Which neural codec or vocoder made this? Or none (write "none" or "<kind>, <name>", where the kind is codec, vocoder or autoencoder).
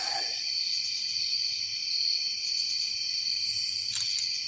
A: none